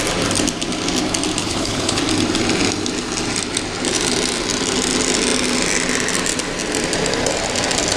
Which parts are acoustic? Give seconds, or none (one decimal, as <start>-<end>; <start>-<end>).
0.0-1.4; 2.0-8.0